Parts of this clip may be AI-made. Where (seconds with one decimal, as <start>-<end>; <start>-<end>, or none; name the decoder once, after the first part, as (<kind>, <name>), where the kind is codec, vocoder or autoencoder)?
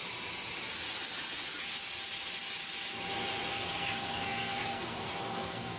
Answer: 3.5-5.8 (codec, SNAC)